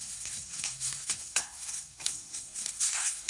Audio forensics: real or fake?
fake